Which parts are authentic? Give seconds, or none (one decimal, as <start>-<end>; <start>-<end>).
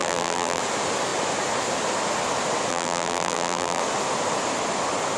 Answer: 0.6-2.7; 3.8-5.2